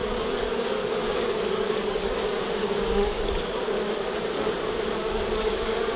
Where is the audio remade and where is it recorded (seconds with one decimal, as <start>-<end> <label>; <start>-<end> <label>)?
0.0-3.6 remade; 3.6-5.0 recorded; 5.0-6.0 remade